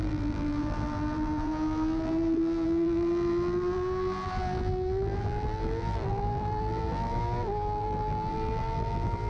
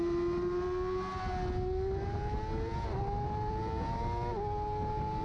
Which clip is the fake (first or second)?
first